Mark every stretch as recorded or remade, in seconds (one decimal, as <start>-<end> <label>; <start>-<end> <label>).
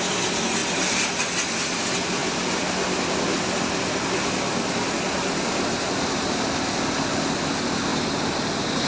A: 0.0-8.9 recorded